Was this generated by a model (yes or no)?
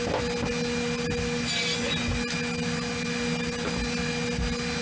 no